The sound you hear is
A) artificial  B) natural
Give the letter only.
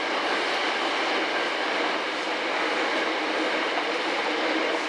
B